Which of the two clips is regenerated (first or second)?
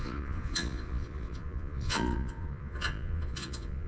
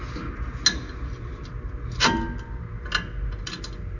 first